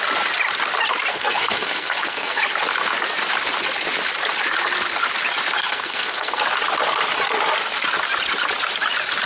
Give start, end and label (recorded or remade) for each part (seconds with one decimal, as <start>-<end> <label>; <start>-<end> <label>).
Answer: 0.0-1.1 recorded; 1.1-2.4 remade; 2.4-5.6 recorded; 5.6-6.4 remade; 6.4-9.3 recorded